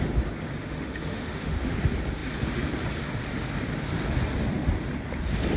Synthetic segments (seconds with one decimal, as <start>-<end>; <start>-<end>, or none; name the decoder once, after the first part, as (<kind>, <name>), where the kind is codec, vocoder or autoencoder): 0.6-1.7 (autoencoder, DAC-VAE)